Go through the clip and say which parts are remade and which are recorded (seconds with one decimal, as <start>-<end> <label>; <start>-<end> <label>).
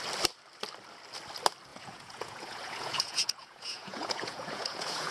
0.0-1.7 recorded; 1.7-5.1 remade